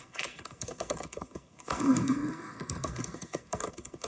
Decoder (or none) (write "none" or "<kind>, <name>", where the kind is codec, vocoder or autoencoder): codec, SNAC